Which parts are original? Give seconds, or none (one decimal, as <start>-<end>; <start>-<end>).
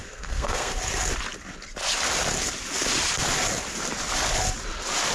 0.7-5.1